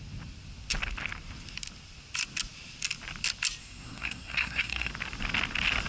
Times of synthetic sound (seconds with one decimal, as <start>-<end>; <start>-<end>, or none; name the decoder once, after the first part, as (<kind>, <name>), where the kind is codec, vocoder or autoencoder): 3.6-4.9 (codec, SNAC)